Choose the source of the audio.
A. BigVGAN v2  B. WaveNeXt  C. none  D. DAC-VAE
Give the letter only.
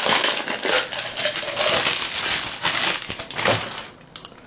C